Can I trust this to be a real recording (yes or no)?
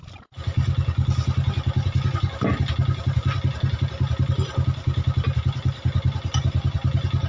yes